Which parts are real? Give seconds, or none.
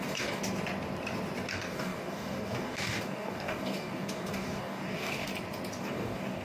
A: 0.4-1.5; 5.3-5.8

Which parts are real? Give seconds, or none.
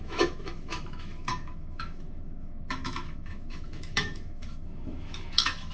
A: none